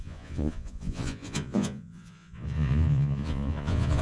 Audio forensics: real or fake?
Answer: fake